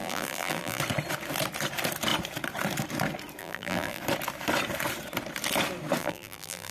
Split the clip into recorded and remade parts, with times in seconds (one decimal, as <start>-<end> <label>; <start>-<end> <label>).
0.0-0.8 remade; 0.8-3.4 recorded; 3.4-4.0 remade; 4.0-6.0 recorded; 6.0-6.7 remade